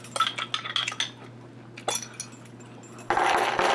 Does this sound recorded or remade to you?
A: recorded